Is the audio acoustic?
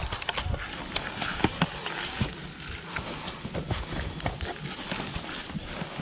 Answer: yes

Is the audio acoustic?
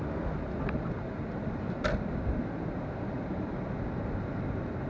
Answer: yes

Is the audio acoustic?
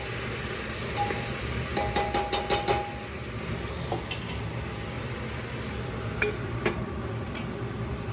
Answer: yes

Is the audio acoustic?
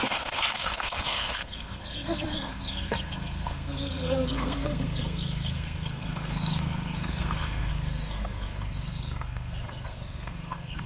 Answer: no